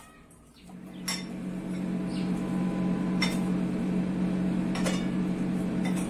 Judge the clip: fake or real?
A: real